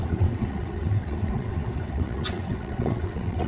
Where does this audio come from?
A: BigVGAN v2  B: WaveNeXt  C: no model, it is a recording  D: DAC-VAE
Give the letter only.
B